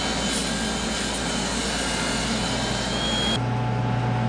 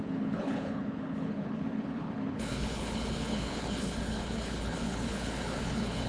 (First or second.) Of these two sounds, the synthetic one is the second